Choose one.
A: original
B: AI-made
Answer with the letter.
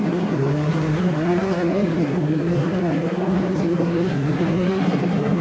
B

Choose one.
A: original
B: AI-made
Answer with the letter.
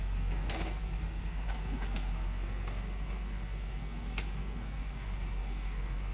B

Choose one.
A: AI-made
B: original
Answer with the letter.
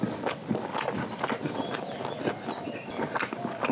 B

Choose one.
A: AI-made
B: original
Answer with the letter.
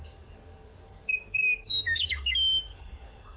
A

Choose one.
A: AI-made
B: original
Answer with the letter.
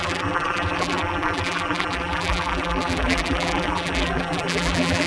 A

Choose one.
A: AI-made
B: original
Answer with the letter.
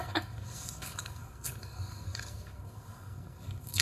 A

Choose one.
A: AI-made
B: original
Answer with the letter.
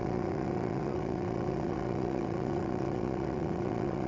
A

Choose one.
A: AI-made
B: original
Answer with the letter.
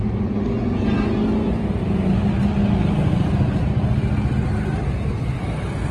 B